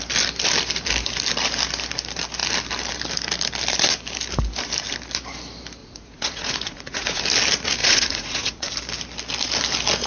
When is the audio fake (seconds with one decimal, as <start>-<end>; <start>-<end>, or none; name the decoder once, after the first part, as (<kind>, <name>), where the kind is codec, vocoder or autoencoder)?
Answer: 5.8-7.2 (vocoder, Vocos); 7.8-8.7